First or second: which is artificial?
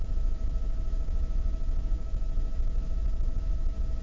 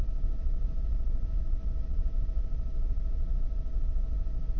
first